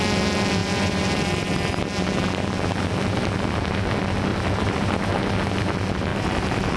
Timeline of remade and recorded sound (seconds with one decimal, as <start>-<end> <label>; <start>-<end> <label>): 0.0-0.6 recorded; 0.6-1.8 remade; 1.8-4.3 recorded; 4.3-5.2 remade; 5.2-6.1 recorded; 6.1-6.8 remade